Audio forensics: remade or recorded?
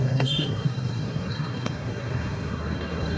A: remade